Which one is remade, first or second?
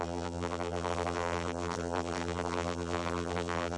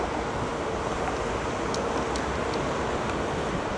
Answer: first